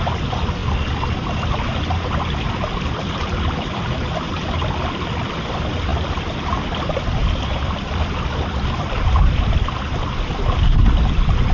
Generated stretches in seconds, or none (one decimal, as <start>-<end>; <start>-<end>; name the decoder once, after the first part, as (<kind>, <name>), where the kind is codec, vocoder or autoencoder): none